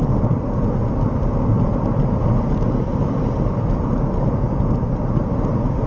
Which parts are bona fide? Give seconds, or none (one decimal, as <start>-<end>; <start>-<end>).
0.0-5.9